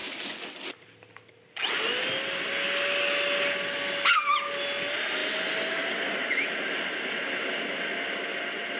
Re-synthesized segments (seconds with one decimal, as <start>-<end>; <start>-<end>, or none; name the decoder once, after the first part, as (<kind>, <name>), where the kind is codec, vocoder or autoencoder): none